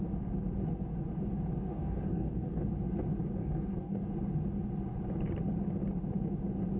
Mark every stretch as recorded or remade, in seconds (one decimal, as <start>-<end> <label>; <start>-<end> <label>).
0.0-1.7 recorded; 1.7-2.6 remade; 2.6-3.4 recorded; 3.4-4.1 remade; 4.1-6.8 recorded